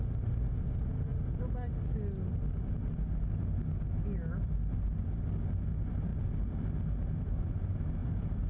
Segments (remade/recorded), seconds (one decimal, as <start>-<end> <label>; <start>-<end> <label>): 0.0-8.5 recorded